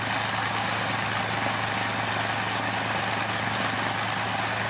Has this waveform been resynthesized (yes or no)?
no